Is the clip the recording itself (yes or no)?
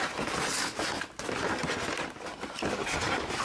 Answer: yes